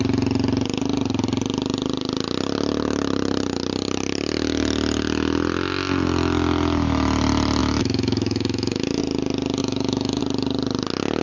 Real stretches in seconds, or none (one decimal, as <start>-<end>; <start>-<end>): 0.0-7.6; 9.0-9.6; 10.2-11.2

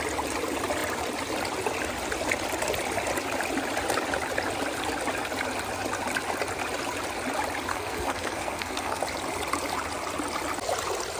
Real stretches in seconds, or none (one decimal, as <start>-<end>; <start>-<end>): 0.0-7.7; 9.0-11.2

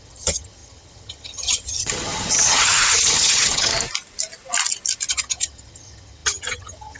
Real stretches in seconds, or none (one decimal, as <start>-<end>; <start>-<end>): 3.7-5.1

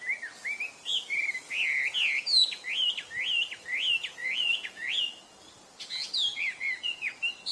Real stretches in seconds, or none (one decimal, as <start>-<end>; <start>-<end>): 0.0-4.2; 5.0-6.3; 7.1-7.5

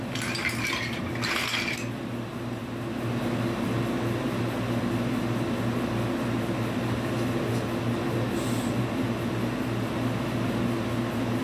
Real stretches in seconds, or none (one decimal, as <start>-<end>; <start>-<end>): 0.0-11.4

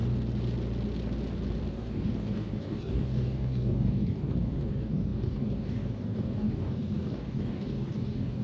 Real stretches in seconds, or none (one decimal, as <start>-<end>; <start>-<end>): 0.0-1.7